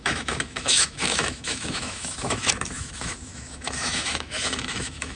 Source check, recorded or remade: remade